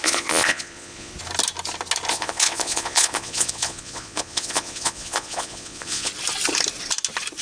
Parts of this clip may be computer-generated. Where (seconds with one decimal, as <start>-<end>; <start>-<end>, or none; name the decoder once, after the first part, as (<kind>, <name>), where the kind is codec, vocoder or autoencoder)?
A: 0.0-1.1 (vocoder, Vocos); 2.1-6.1